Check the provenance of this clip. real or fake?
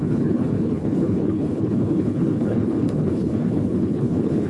fake